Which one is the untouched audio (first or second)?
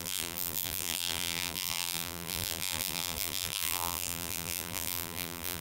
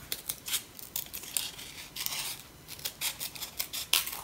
second